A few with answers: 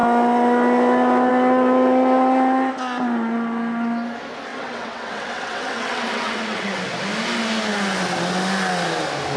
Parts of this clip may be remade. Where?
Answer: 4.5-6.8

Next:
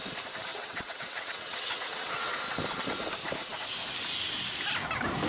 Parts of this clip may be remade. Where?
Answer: 0.5-2.4

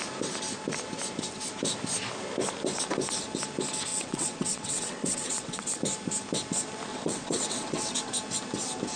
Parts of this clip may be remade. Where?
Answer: 3.9-5.8; 6.9-8.1

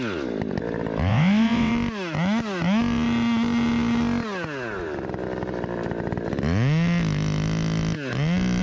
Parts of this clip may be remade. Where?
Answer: 1.1-1.7